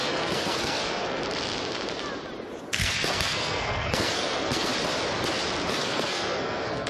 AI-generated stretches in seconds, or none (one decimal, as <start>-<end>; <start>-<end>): 0.0-1.2; 2.7-4.7; 5.7-6.9